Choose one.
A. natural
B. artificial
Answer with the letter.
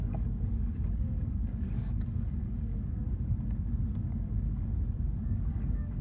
B